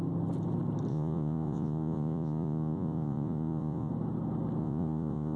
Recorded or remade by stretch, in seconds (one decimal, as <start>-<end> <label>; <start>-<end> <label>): 0.0-0.9 recorded; 0.9-3.9 remade; 3.9-4.6 recorded; 4.6-5.4 remade